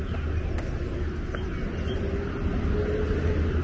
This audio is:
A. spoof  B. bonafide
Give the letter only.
B